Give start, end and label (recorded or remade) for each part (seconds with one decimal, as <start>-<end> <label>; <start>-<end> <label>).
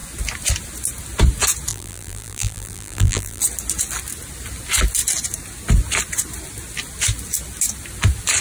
0.0-1.7 recorded; 1.7-3.4 remade; 3.4-8.4 recorded